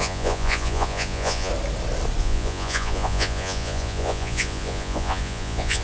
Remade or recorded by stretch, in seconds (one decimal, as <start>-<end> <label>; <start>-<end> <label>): 0.0-1.5 remade; 1.5-2.2 recorded; 2.2-5.8 remade

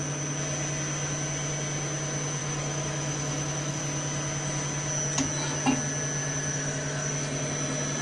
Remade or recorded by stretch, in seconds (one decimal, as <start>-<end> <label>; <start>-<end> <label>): 0.0-2.4 recorded; 2.4-3.8 remade; 3.8-6.2 recorded; 6.2-7.1 remade; 7.1-8.0 recorded

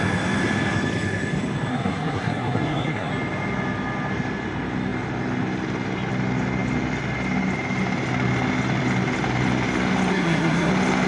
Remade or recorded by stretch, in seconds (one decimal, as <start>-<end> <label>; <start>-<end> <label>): 0.0-1.7 recorded; 1.7-3.1 remade; 3.1-10.1 recorded; 10.1-10.7 remade; 10.7-11.1 recorded

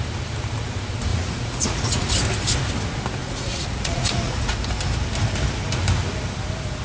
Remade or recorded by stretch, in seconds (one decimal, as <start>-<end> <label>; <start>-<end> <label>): 0.0-1.1 recorded; 1.1-2.1 remade; 2.1-3.2 recorded; 3.2-4.5 remade; 4.5-6.8 recorded